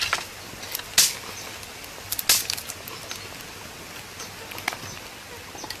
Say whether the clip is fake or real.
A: real